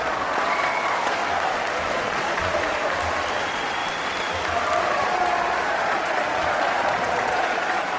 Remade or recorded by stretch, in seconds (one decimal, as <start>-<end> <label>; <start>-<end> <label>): 0.0-1.2 remade; 1.2-1.9 recorded; 1.9-2.8 remade; 2.8-3.3 recorded; 3.3-3.8 remade; 3.8-4.8 recorded; 4.8-8.0 remade